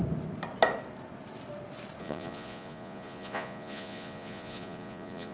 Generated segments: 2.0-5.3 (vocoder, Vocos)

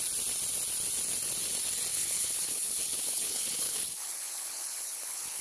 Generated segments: 1.9-5.4 (codec, HILCodec)

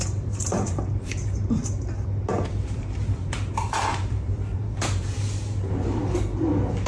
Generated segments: 0.0-1.6 (vocoder, BigVGAN v2); 2.5-6.0

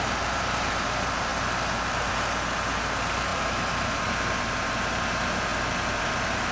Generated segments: 0.0-1.3 (vocoder, BigVGAN v2); 2.1-5.5; 6.0-6.5

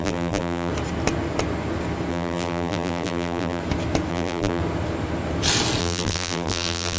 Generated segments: 0.0-0.7 (vocoder, BigVGAN v2); 2.1-3.6; 4.1-4.6; 5.8-7.0

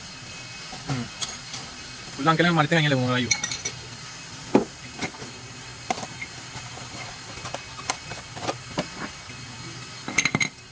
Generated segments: none